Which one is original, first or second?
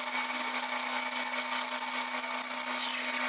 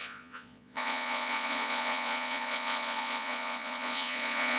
first